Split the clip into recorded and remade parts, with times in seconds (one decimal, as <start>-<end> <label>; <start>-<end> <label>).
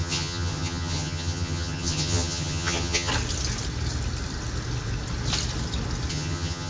0.0-3.1 remade; 3.1-6.1 recorded; 6.1-6.7 remade